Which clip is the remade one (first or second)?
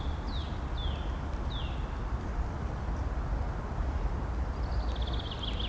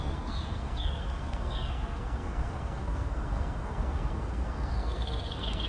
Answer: second